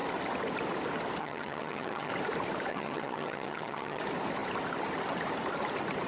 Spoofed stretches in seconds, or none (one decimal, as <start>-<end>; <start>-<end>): 1.2-2.1; 2.7-4.0